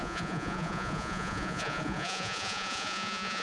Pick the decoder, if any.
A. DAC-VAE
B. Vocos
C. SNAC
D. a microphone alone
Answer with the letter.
B